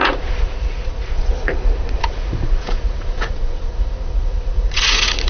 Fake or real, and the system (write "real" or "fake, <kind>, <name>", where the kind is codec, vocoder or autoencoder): fake, vocoder, Vocos